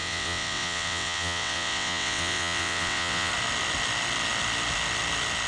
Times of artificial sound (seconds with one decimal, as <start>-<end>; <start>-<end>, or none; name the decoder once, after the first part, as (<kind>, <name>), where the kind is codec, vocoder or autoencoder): 0.0-3.3 (vocoder, WaveNeXt)